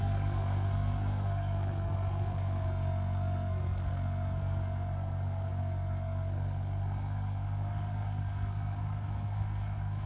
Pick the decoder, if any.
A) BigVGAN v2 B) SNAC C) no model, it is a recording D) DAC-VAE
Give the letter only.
B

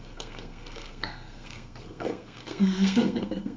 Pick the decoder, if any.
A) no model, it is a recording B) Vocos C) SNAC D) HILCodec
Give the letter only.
C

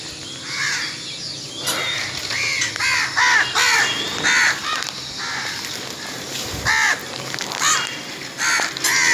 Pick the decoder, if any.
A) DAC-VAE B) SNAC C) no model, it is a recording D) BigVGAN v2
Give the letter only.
C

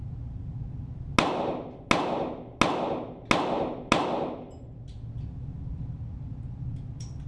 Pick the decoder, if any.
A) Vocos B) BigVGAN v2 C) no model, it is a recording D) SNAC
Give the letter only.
C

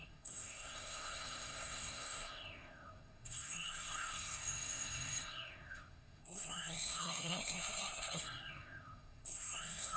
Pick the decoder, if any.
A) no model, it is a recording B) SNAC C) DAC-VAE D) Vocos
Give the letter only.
B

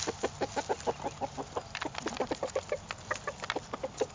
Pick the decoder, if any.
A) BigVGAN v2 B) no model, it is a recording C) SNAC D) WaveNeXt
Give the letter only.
B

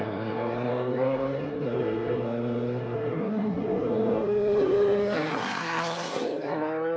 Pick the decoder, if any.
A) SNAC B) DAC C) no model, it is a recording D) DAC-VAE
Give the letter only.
A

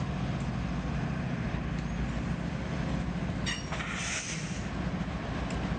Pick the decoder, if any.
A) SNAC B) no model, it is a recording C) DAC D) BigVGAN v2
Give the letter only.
B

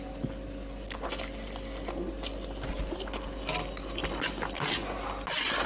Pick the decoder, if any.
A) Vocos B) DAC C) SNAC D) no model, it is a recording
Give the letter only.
D